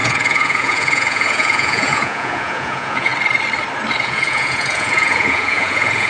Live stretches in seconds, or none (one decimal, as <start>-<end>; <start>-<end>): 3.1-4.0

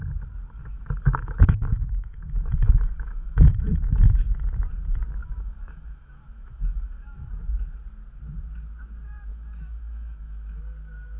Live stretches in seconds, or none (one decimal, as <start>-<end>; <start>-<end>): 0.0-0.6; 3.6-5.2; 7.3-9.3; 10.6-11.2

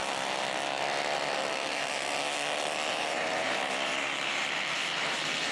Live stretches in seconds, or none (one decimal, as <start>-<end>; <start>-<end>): 0.0-2.9

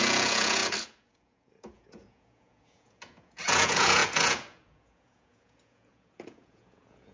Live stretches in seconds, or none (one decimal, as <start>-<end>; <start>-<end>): none

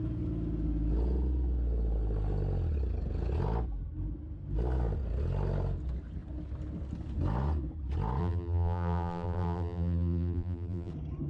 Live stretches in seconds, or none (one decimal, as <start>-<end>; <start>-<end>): 0.0-8.2; 10.9-11.3

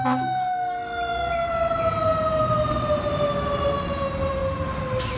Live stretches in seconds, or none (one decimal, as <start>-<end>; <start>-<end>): 0.0-5.2

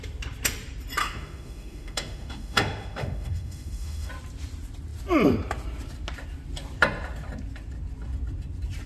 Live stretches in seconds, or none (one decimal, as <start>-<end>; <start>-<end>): 0.0-1.0; 4.1-8.9